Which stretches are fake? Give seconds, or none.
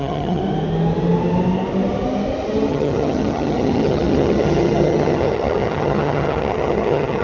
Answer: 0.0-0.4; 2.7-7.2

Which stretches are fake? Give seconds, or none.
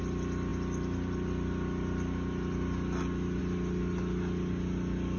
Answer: none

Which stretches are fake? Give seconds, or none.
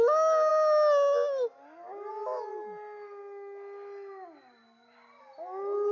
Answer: none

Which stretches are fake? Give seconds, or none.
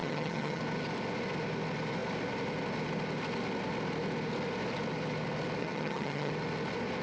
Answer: 0.0-0.6; 5.6-6.3